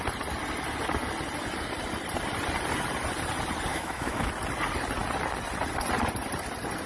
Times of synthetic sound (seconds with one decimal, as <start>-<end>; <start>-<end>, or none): 3.7-4.3

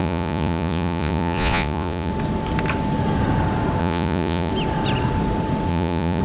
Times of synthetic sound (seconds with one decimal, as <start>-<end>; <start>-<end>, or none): 0.0-2.1; 3.8-4.5; 5.7-6.2

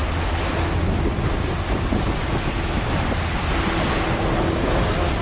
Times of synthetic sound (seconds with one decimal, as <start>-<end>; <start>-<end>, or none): none

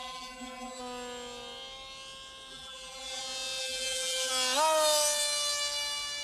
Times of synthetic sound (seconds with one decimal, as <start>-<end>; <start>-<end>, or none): 0.0-0.8; 2.5-3.2; 3.6-4.3